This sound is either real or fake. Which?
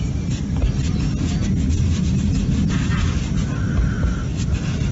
real